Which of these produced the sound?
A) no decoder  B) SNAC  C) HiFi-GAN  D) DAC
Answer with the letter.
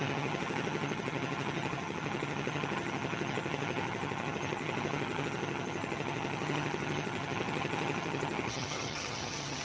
C